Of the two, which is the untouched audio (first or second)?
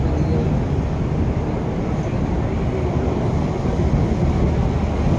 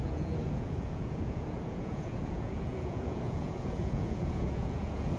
first